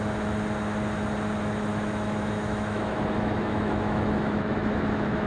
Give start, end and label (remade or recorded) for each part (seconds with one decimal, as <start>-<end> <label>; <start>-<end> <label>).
0.0-1.7 recorded; 1.7-5.3 remade